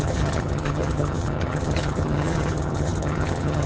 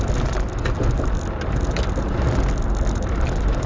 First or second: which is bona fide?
second